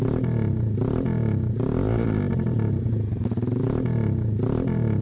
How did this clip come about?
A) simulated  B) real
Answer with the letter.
B